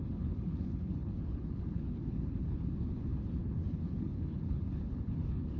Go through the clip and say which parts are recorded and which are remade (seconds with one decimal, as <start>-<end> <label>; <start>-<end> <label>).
0.0-5.6 remade

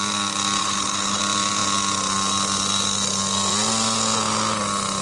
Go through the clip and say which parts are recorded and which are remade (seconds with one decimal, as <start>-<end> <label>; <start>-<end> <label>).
0.0-0.6 recorded; 0.6-1.2 remade; 1.2-5.0 recorded

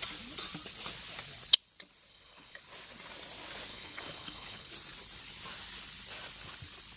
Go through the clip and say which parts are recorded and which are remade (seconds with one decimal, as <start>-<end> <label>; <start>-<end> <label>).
0.0-2.1 recorded; 2.1-2.6 remade; 2.6-3.7 recorded; 3.7-4.7 remade; 4.7-7.0 recorded